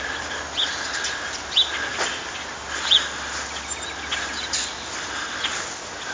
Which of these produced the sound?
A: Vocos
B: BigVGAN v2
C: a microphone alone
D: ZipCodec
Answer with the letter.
C